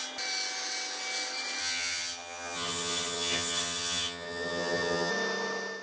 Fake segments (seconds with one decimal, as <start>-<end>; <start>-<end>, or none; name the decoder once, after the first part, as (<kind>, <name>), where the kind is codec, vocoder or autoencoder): 1.6-5.1 (vocoder, HiFi-GAN)